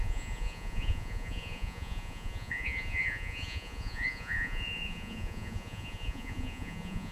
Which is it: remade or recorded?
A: remade